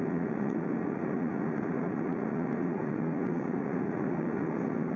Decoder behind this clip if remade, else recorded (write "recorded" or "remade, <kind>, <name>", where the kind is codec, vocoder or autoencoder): remade, vocoder, Vocos